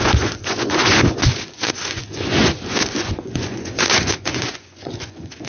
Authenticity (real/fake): fake